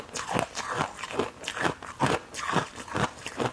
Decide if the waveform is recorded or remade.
recorded